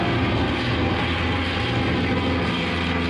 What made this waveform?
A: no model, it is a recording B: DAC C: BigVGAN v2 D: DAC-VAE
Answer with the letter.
A